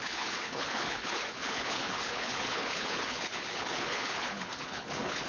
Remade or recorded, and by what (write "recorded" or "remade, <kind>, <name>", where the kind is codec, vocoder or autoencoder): remade, codec, HILCodec